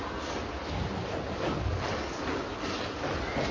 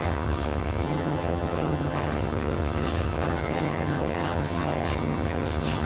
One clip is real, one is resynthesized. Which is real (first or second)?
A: first